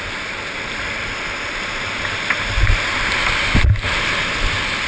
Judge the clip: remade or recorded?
recorded